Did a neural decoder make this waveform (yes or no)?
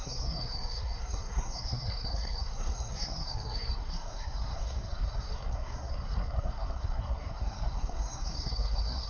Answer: yes